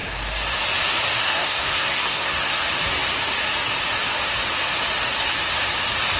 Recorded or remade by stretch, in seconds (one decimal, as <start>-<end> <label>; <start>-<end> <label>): 0.0-1.2 recorded; 1.2-2.6 remade; 2.6-6.2 recorded

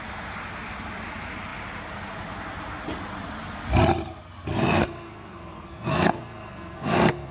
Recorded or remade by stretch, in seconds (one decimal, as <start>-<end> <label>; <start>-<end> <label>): 0.0-4.5 recorded; 4.5-7.3 remade